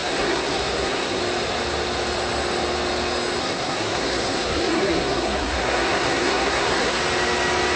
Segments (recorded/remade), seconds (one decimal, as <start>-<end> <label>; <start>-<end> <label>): 0.0-1.2 remade; 1.2-3.4 recorded; 3.4-7.0 remade; 7.0-7.8 recorded

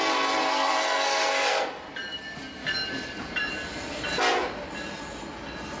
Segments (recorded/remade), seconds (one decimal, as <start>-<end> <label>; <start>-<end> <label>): 0.0-0.4 recorded; 0.4-1.7 remade; 1.7-5.8 recorded

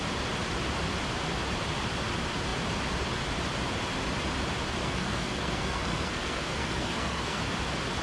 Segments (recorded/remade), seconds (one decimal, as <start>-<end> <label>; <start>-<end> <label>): 0.0-4.8 recorded; 4.8-7.4 remade; 7.4-8.0 recorded

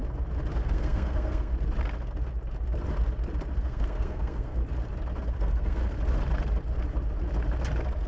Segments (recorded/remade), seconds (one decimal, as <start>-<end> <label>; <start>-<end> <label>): 0.0-0.7 recorded; 0.7-1.5 remade; 1.5-3.6 recorded; 3.6-4.6 remade; 4.6-5.3 recorded; 5.3-5.8 remade; 5.8-8.1 recorded